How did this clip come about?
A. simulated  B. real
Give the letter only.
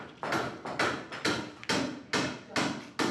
B